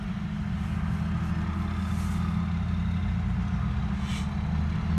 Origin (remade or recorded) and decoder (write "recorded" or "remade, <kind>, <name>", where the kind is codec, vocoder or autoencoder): recorded